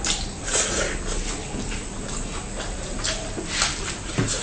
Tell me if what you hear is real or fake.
real